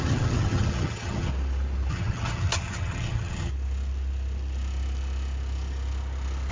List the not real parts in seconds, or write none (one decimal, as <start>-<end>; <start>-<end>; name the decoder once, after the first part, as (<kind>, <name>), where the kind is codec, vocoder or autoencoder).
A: 0.0-1.3 (vocoder, HiFi-GAN); 1.9-3.5